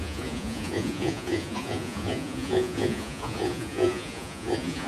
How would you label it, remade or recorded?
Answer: remade